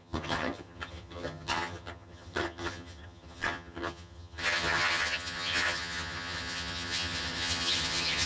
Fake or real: fake